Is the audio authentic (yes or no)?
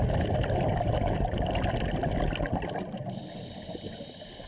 yes